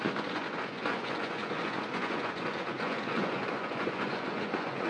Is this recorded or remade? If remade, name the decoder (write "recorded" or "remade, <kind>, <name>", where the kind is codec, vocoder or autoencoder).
remade, vocoder, Vocos